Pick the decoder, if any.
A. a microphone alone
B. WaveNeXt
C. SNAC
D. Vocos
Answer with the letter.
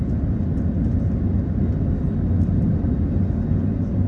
A